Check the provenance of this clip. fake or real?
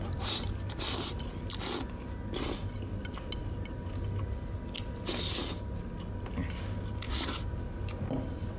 real